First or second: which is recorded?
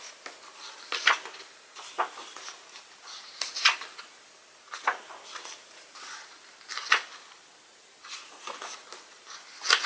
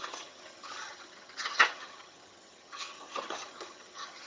first